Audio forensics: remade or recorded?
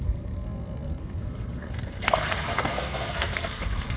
remade